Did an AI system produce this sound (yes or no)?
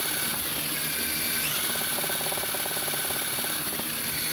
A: no